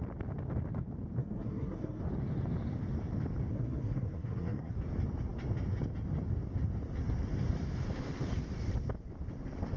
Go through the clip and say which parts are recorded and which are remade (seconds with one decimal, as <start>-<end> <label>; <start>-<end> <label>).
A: 0.0-1.2 recorded; 1.2-2.0 remade; 2.0-3.5 recorded; 3.5-4.7 remade; 4.7-9.8 recorded